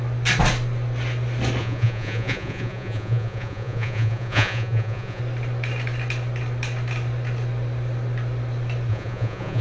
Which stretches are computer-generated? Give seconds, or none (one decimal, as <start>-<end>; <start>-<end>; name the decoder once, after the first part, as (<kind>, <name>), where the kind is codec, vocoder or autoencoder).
1.6-5.2 (vocoder, Vocos); 8.9-9.6